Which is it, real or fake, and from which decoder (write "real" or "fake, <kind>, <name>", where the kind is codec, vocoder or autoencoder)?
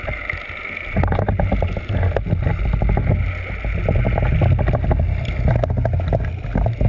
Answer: real